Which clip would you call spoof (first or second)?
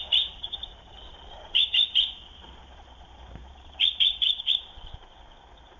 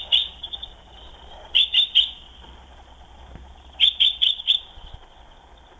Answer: first